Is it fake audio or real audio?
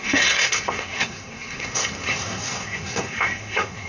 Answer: fake